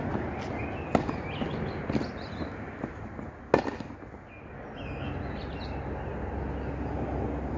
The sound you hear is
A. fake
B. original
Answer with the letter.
B